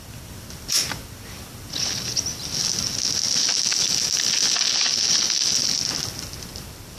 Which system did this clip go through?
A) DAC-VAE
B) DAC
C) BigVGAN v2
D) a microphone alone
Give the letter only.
D